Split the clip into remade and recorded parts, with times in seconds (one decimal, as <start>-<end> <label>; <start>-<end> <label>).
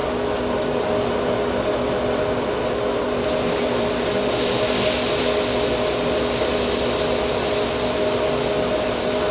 0.0-9.3 recorded